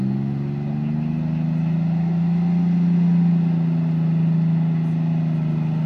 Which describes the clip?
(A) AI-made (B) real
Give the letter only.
B